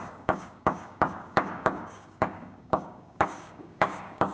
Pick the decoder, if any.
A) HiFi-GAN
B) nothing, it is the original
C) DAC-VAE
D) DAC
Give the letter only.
D